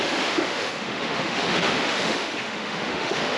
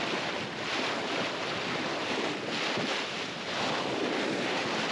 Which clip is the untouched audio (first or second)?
second